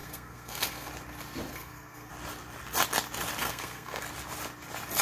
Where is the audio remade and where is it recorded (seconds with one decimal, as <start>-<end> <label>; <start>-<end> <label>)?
0.0-0.9 remade; 0.9-1.5 recorded; 1.5-2.1 remade; 2.1-3.4 recorded; 3.4-4.0 remade; 4.0-5.0 recorded